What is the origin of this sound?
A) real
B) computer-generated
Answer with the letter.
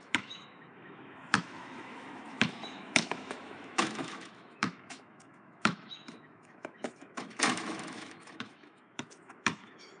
B